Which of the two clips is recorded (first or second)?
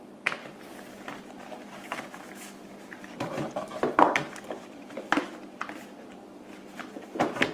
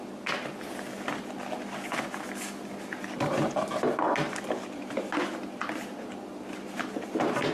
second